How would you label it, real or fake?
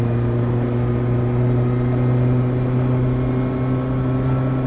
real